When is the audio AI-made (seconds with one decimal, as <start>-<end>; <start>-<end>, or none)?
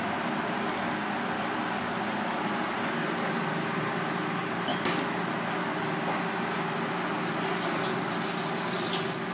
none